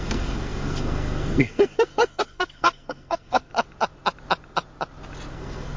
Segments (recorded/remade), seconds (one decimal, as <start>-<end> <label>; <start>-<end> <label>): 0.0-3.5 remade; 3.5-5.3 recorded; 5.3-5.8 remade